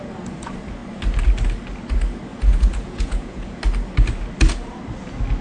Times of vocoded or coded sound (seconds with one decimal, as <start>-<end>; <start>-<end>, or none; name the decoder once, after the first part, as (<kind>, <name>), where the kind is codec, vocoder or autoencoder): 2.3-3.6 (vocoder, Vocos)